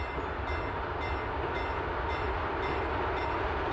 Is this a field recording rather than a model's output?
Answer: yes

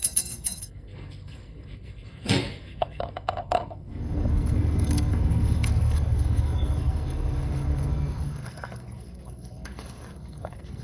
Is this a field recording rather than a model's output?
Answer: no